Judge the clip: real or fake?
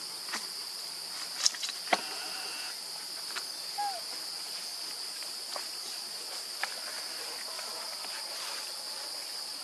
real